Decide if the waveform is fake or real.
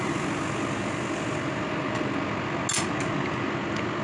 real